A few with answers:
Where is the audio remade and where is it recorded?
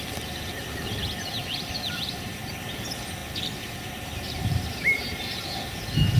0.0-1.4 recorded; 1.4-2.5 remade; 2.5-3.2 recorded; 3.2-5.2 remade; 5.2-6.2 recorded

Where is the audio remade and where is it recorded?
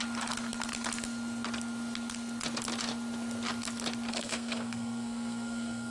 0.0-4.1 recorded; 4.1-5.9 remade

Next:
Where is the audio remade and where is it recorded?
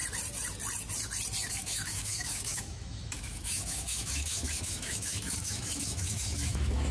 0.0-1.5 recorded; 1.5-6.9 remade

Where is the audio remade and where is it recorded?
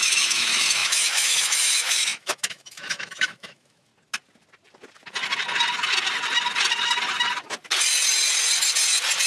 0.0-3.9 remade; 3.9-9.3 recorded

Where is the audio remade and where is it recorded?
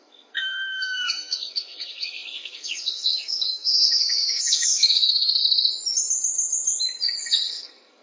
0.0-5.4 remade; 5.4-7.2 recorded; 7.2-8.0 remade